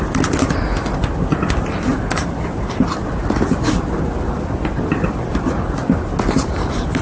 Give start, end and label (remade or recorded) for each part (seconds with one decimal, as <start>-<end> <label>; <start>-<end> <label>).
0.0-7.0 recorded